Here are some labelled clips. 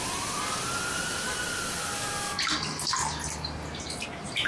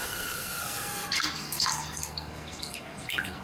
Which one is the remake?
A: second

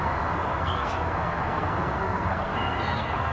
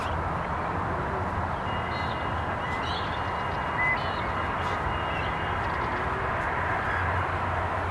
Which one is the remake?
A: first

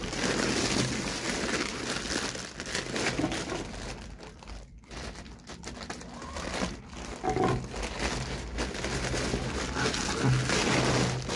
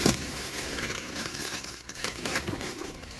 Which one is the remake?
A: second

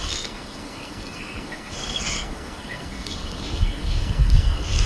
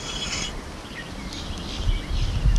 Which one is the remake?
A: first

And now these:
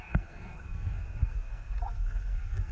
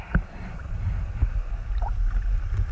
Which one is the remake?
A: first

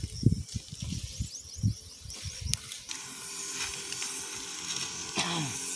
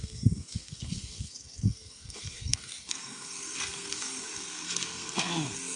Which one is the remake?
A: second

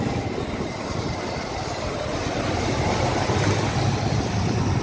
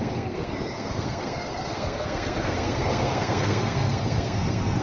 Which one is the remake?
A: second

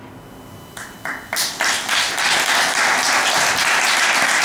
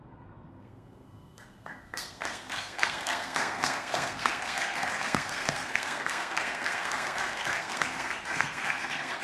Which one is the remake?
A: second